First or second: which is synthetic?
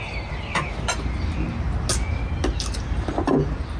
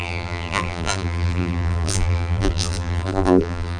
second